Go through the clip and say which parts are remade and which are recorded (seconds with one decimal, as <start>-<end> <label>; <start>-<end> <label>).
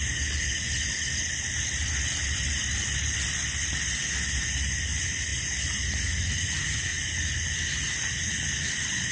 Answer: 0.0-9.1 recorded